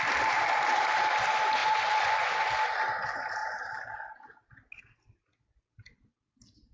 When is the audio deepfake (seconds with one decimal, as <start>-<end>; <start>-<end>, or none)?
1.6-2.5